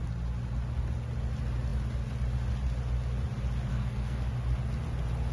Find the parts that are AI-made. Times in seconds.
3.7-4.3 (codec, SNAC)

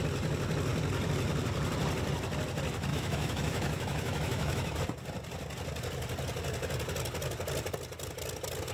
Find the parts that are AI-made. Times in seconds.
2.9-4.8 (autoencoder, DAC-VAE)

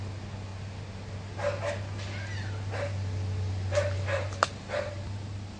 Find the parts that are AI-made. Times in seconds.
none

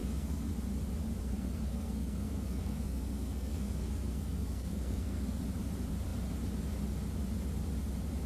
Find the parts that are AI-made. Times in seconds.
0.0-0.5 (codec, SNAC); 1.2-5.4